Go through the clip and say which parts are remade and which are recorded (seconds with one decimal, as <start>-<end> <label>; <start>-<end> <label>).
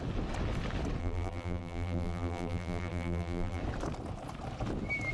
0.0-1.0 recorded; 1.0-3.6 remade; 3.6-5.1 recorded